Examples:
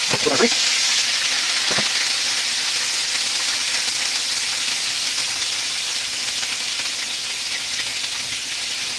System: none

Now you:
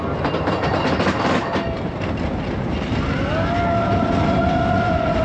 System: none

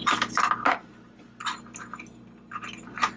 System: none